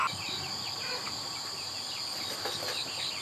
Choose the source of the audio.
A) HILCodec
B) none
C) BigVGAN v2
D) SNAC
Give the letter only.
B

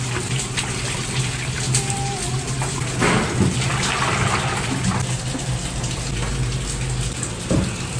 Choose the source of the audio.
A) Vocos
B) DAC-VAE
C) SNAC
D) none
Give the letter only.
D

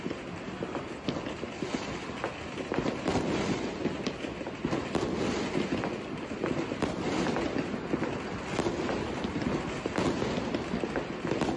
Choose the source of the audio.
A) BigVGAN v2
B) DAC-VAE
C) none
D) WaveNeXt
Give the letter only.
C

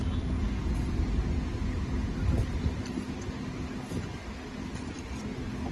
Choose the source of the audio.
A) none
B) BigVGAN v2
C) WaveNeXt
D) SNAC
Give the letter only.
A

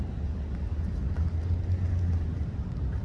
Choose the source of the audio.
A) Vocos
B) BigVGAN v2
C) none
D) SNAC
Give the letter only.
C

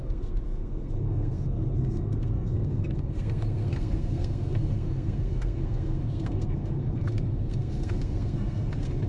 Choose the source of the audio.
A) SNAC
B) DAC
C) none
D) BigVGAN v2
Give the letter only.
A